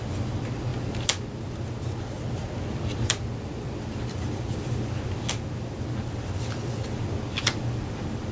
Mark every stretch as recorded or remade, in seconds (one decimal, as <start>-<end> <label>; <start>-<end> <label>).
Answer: 0.0-8.3 recorded